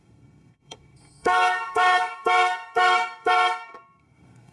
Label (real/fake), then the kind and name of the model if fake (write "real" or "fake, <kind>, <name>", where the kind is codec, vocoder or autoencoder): fake, codec, SNAC